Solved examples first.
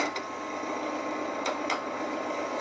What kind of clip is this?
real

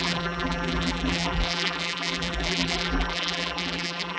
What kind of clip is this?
fake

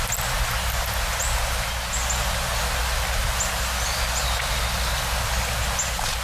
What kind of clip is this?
real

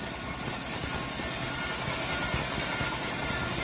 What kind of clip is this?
real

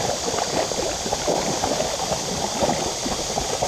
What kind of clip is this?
real